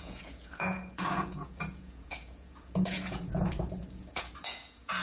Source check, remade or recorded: remade